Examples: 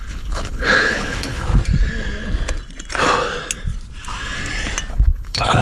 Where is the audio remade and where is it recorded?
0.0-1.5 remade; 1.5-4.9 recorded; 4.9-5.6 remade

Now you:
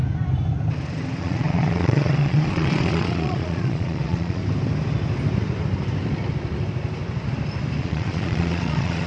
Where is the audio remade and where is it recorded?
0.0-1.2 recorded; 1.2-4.4 remade; 4.4-7.8 recorded; 7.8-9.1 remade